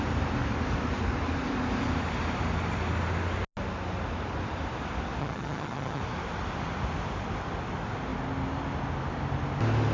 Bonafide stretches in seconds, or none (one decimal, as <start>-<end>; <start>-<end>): 0.0-5.2; 6.0-9.9